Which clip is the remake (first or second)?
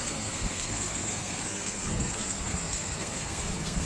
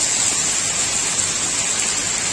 first